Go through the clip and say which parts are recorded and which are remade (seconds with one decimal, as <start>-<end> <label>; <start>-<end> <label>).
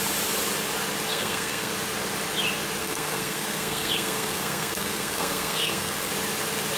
0.0-1.1 recorded; 1.1-1.7 remade; 1.7-2.8 recorded; 2.8-6.1 remade; 6.1-6.8 recorded